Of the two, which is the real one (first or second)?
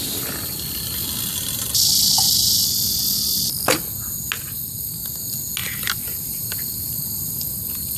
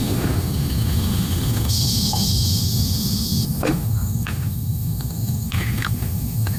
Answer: first